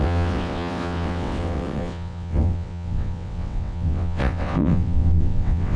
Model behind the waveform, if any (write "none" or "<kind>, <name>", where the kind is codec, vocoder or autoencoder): vocoder, WaveNeXt